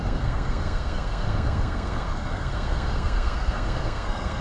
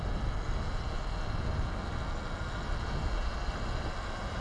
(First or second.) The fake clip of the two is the first